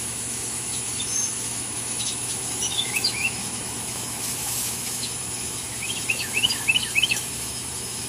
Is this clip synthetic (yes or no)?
yes